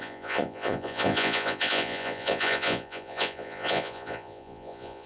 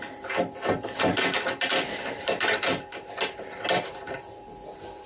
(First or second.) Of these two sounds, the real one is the second